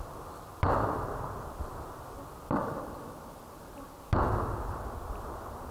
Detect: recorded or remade recorded